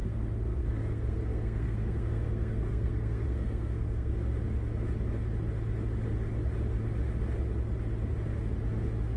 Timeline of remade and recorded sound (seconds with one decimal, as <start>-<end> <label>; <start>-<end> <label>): 0.0-4.1 remade; 4.1-9.2 recorded